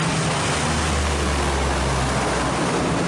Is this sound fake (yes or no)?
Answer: no